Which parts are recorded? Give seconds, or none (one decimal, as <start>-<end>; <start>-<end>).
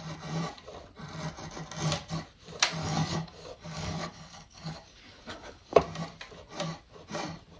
0.0-2.8; 5.8-7.6